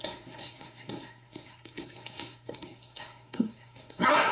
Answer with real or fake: fake